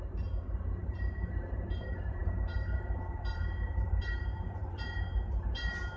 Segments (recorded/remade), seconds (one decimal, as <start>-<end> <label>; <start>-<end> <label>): 0.0-6.0 remade

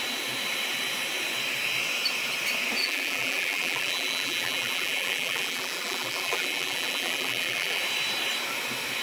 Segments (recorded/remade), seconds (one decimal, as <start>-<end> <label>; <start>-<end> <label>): 0.0-2.8 recorded; 2.8-7.8 remade; 7.8-9.0 recorded

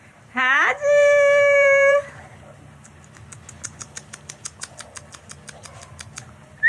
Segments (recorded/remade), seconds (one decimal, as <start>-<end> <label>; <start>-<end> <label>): 0.0-3.3 remade; 3.3-6.7 recorded

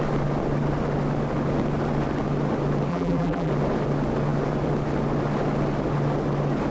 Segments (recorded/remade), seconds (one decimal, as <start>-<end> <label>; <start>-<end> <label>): 0.0-2.9 recorded; 2.9-3.5 remade; 3.5-6.7 recorded

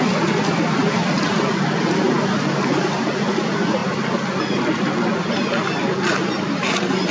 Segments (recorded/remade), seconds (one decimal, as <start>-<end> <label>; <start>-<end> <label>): 0.0-7.1 recorded